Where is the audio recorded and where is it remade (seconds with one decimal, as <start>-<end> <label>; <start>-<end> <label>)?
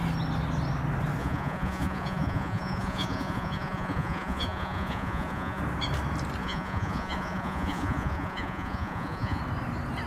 0.0-1.2 recorded; 1.2-5.6 remade; 5.6-6.4 recorded; 6.4-9.4 remade; 9.4-10.1 recorded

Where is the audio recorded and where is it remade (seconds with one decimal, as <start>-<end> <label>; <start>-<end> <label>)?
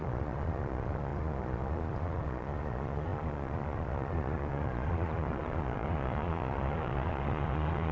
0.0-7.9 remade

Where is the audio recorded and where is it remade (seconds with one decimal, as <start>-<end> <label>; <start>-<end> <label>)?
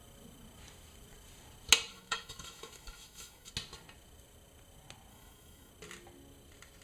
0.0-1.9 recorded; 1.9-3.5 remade; 3.5-5.1 recorded; 5.1-5.7 remade; 5.7-6.8 recorded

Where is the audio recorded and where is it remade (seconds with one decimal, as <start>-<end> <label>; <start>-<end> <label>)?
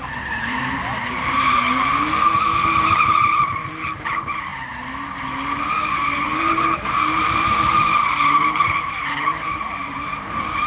0.0-4.5 remade; 4.5-6.4 recorded; 6.4-10.7 remade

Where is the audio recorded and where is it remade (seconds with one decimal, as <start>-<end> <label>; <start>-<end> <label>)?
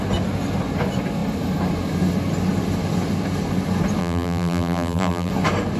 0.0-4.0 recorded; 4.0-5.3 remade; 5.3-5.8 recorded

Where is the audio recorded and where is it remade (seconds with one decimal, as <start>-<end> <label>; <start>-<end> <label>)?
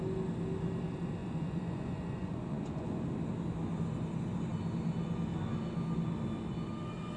0.0-1.2 recorded; 1.2-3.0 remade; 3.0-7.2 recorded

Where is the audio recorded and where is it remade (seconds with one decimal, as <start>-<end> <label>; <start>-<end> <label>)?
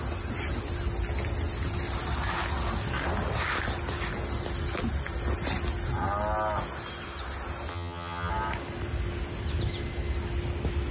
0.0-7.7 recorded; 7.7-8.3 remade; 8.3-10.9 recorded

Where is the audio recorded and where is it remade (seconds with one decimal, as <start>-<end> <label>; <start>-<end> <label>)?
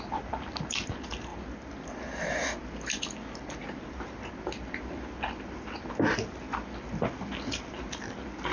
0.0-8.5 recorded